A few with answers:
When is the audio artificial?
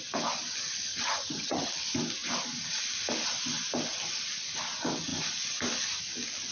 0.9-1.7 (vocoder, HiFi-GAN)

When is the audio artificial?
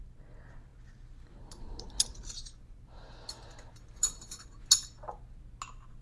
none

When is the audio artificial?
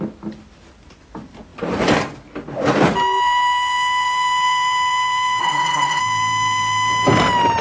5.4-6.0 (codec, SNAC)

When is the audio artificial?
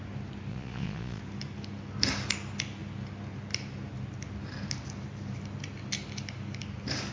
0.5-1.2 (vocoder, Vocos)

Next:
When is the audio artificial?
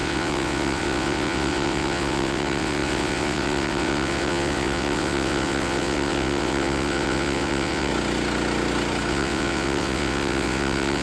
0.0-7.9 (vocoder, WaveNeXt); 9.1-11.0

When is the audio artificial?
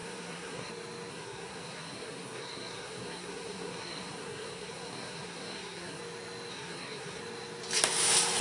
0.0-0.7 (codec, SNAC); 1.1-6.0; 6.5-7.2